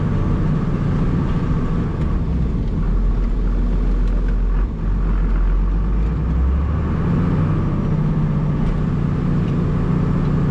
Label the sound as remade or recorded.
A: recorded